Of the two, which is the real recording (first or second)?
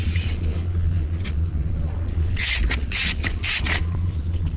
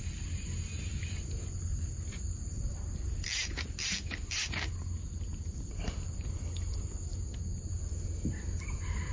second